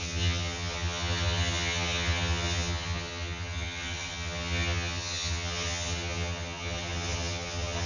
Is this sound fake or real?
fake